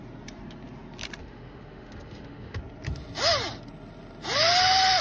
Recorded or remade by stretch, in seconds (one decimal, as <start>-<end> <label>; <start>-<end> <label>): 0.0-1.2 recorded; 1.2-2.6 remade; 2.6-5.0 recorded

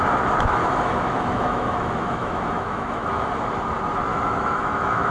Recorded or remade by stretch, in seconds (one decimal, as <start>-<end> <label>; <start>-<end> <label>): 0.0-0.6 recorded; 0.6-3.3 remade; 3.3-4.1 recorded; 4.1-5.1 remade

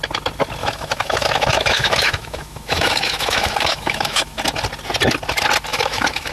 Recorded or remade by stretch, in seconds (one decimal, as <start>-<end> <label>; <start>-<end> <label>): 0.0-0.6 recorded; 0.6-4.4 remade; 4.4-5.7 recorded; 5.7-6.3 remade